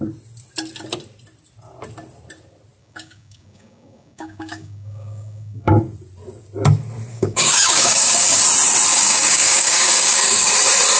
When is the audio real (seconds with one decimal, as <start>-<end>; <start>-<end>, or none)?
0.0-2.8; 5.7-7.1; 8.4-8.9; 10.5-11.0